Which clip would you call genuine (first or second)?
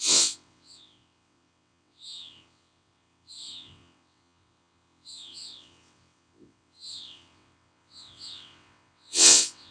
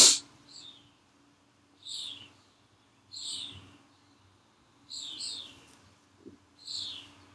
second